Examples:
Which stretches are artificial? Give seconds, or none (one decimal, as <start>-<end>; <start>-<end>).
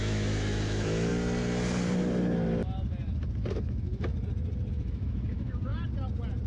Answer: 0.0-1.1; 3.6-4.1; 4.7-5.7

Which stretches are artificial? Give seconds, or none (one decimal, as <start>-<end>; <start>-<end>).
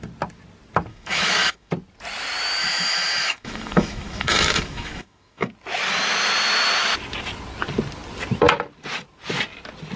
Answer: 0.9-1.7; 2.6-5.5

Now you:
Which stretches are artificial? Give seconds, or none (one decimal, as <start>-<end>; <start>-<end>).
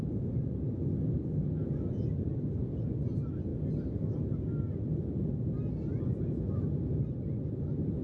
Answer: none